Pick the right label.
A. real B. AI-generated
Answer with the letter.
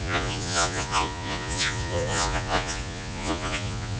B